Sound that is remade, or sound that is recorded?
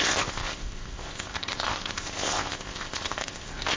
remade